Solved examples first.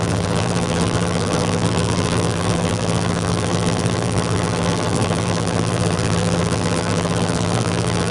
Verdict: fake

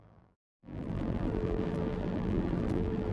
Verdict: fake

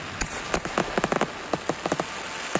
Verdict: real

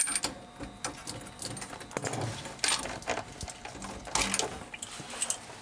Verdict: real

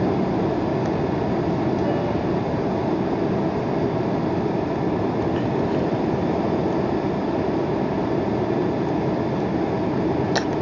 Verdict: real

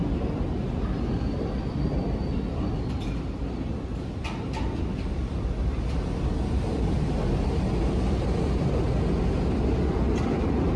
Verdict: real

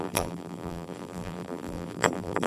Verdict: fake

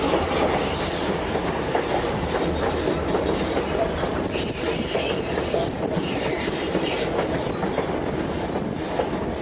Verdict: fake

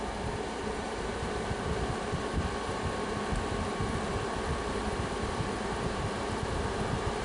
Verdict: fake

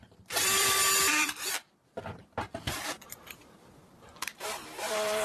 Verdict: fake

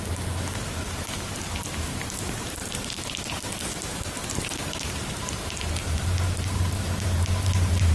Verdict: fake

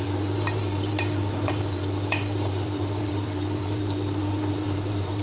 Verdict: fake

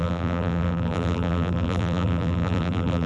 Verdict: fake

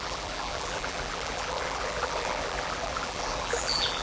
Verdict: fake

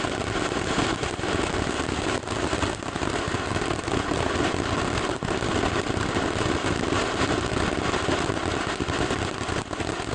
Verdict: real